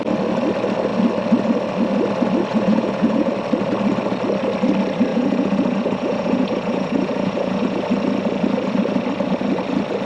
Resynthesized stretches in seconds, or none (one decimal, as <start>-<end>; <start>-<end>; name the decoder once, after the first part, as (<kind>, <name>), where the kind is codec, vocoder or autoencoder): 2.5-3.3 (vocoder, Vocos); 5.1-7.8